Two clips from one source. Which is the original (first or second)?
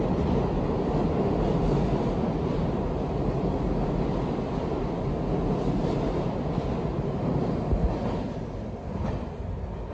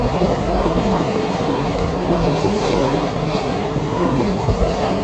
first